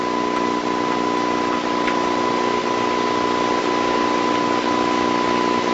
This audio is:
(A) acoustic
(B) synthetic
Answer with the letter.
A